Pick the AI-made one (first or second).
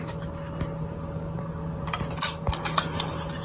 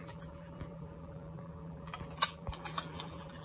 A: second